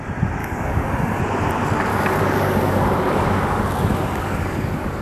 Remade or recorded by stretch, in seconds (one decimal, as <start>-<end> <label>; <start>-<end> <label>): 0.0-0.4 recorded; 0.4-1.2 remade; 1.2-1.9 recorded; 1.9-5.0 remade